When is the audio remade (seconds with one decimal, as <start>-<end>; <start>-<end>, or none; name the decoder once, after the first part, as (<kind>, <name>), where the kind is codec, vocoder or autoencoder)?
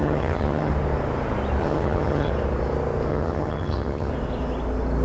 0.0-0.7 (vocoder, HiFi-GAN); 1.6-2.3; 3.1-4.1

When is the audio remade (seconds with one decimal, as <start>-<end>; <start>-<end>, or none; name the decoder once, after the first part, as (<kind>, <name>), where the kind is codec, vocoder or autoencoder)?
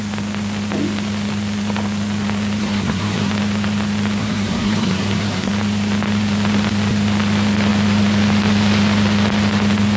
2.6-3.3 (codec, SNAC); 4.2-5.5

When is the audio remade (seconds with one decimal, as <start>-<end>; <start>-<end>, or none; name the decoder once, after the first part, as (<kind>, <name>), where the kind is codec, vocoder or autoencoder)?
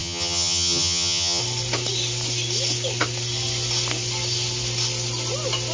0.0-1.4 (vocoder, HiFi-GAN)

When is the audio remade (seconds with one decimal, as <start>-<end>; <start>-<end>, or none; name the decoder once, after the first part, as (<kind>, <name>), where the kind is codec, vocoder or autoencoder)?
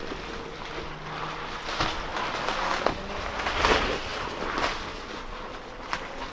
none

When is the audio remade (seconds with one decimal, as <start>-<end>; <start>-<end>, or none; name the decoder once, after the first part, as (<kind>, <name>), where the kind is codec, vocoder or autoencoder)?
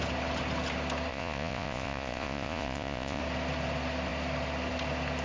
1.1-3.2 (vocoder, Vocos)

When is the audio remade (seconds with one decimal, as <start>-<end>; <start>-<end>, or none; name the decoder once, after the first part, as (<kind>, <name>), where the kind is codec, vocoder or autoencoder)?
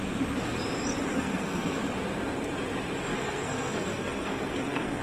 1.1-1.8 (codec, SNAC); 3.1-5.0